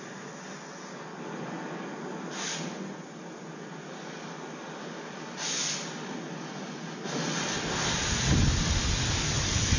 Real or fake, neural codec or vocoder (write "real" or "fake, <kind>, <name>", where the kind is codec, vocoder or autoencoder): real